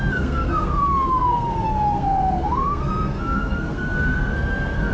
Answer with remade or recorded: remade